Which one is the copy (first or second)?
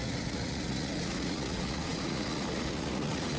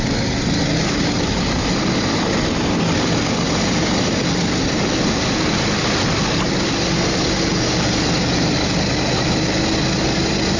first